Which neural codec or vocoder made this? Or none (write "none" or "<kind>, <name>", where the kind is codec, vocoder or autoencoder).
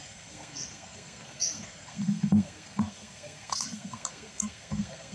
codec, SNAC